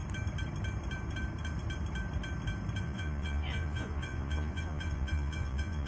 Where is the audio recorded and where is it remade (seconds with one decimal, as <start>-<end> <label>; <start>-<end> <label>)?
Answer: 0.0-2.8 recorded; 2.8-5.9 remade